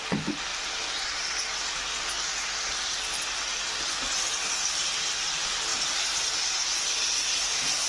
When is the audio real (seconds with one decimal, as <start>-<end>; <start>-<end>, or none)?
0.0-7.9